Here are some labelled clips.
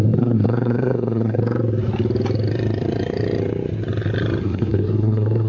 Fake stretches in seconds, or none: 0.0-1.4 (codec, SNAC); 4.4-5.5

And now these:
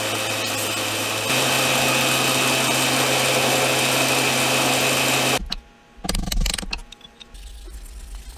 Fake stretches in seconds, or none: none

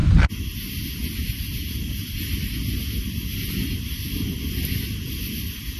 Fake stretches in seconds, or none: none

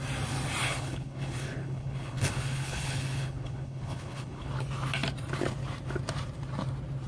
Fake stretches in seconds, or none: 0.6-4.5 (codec, HILCodec)

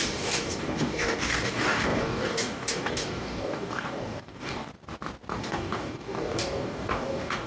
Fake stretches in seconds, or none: 0.0-4.7 (codec, DAC); 5.4-7.5